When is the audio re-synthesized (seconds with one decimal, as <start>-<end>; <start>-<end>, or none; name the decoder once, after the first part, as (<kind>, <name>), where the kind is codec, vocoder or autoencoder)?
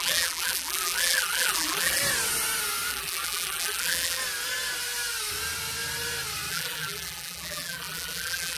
0.0-2.0 (vocoder, BigVGAN v2); 2.9-4.2; 6.5-8.6